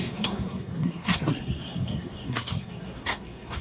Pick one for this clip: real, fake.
fake